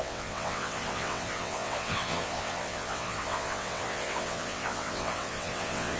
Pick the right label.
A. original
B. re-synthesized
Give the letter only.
B